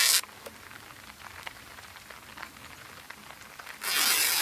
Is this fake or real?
real